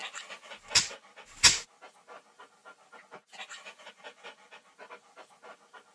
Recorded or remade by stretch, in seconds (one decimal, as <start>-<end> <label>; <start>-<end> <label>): 0.0-5.9 recorded